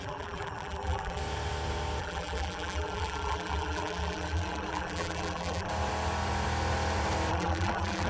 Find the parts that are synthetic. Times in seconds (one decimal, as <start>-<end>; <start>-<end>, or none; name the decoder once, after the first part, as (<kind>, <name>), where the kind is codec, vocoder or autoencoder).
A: 0.0-1.2 (vocoder, BigVGAN v2); 2.0-5.7; 7.3-8.1